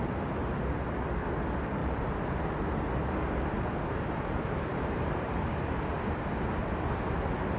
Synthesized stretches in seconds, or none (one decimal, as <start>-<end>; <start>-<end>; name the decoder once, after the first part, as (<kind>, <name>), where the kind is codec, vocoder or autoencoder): 1.8-2.6 (vocoder, BigVGAN v2); 4.7-5.8